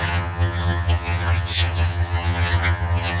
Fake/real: fake